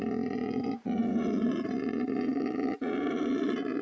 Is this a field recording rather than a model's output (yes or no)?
no